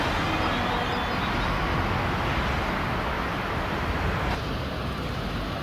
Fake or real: real